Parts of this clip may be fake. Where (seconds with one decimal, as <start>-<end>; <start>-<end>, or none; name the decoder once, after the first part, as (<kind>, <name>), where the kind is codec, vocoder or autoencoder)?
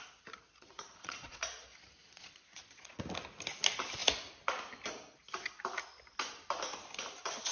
0.5-1.4 (vocoder, Vocos); 2.0-3.0